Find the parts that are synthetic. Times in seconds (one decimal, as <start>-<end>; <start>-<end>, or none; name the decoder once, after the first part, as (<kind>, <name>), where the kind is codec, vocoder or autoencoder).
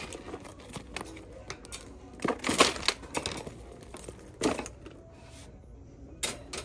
none